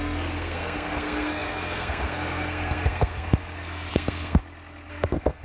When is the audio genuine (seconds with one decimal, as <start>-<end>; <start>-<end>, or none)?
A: 4.4-4.9